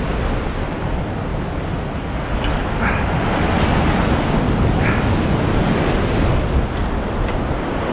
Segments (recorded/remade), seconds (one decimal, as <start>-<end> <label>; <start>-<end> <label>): 0.0-7.9 recorded